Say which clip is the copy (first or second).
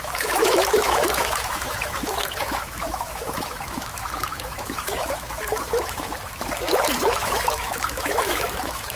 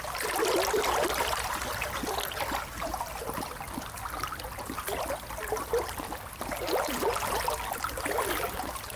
first